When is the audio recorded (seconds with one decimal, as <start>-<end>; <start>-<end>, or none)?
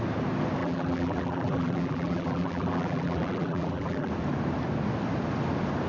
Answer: 0.0-0.6; 4.1-5.9